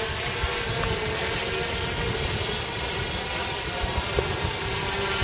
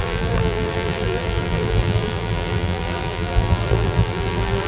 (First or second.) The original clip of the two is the first